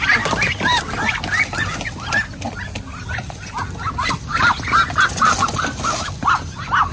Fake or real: real